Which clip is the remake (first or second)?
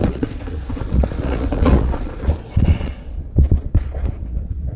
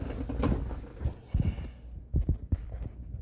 first